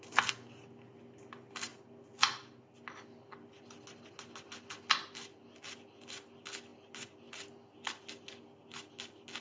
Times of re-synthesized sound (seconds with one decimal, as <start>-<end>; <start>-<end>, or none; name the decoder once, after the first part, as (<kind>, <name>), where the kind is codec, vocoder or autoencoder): none